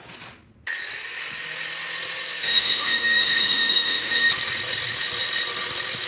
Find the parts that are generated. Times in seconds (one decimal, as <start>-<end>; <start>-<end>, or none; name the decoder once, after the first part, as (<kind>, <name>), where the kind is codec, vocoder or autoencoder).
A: 2.4-4.3 (autoencoder, DAC-VAE)

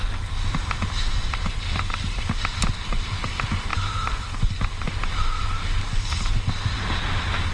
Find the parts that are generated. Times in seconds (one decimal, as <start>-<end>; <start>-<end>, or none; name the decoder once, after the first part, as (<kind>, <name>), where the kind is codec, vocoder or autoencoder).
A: none

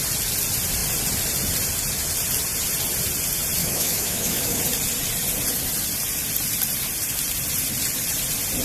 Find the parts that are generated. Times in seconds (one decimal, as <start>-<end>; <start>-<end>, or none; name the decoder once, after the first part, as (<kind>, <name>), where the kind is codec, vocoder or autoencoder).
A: 3.6-4.6 (autoencoder, DAC-VAE)